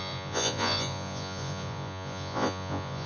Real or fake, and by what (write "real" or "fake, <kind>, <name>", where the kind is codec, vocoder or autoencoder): fake, vocoder, Vocos